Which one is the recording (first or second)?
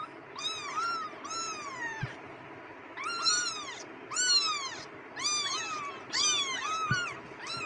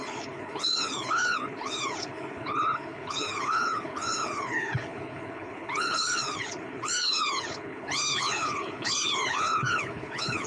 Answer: first